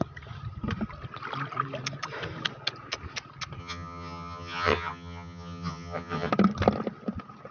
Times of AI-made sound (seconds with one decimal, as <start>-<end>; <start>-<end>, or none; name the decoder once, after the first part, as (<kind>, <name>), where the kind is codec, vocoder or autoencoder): 3.6-6.3 (vocoder, HiFi-GAN)